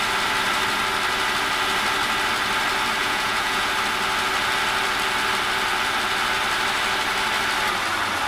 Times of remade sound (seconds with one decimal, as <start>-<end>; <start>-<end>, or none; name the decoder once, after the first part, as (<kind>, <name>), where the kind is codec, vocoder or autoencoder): 3.0-3.7 (vocoder, Vocos)